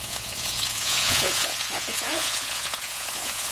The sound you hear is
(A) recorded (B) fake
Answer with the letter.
B